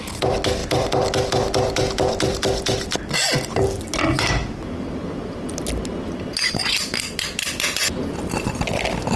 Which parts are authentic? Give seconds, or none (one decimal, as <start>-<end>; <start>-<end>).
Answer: 0.0-9.2